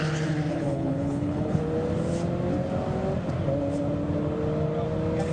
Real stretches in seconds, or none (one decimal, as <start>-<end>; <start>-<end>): 0.0-0.5; 1.6-5.3